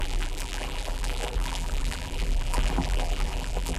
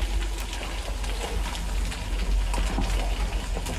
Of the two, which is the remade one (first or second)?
first